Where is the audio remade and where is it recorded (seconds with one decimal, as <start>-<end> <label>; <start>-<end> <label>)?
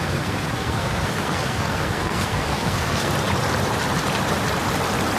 0.0-3.1 remade; 3.1-5.2 recorded